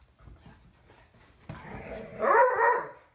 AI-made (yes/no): no